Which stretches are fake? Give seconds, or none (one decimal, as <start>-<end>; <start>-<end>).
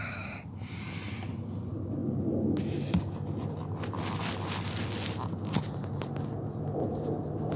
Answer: none